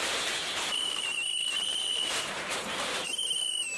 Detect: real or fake fake